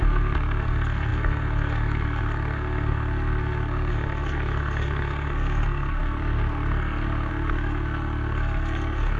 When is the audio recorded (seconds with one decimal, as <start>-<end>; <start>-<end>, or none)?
none